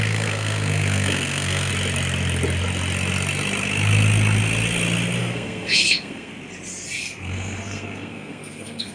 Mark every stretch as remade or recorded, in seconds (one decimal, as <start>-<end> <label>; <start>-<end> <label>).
0.0-1.7 remade; 1.7-5.2 recorded; 5.2-6.3 remade; 6.3-7.0 recorded; 7.0-8.9 remade